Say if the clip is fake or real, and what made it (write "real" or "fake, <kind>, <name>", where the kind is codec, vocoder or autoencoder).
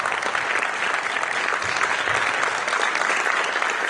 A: real